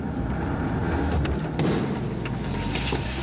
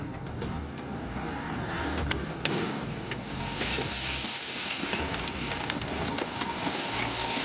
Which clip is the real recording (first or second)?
first